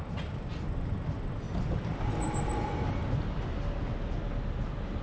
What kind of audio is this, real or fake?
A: real